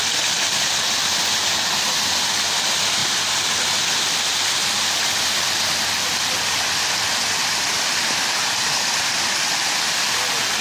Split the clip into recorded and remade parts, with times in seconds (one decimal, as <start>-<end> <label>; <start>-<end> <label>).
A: 0.0-10.6 recorded